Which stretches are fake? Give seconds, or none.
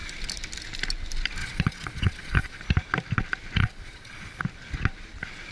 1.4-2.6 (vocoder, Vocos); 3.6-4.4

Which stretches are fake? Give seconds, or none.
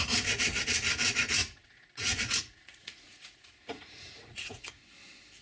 1.4-4.6 (vocoder, Vocos)